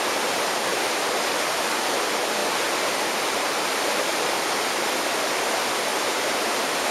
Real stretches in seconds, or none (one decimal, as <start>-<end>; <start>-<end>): 0.0-0.7; 1.3-5.9